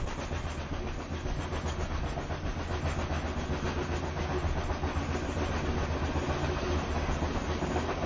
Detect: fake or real real